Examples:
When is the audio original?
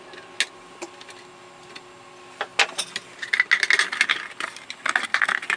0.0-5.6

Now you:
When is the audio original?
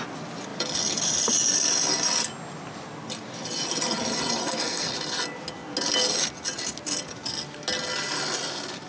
0.0-4.4; 4.9-8.9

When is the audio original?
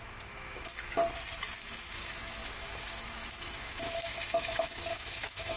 1.0-1.6